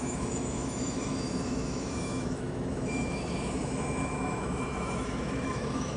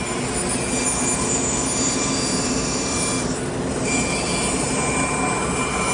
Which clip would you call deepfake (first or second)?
first